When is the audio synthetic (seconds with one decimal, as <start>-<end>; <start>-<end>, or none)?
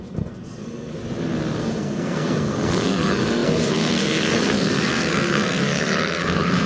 0.0-1.0; 1.6-6.7